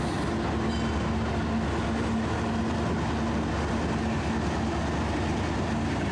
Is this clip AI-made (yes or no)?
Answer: no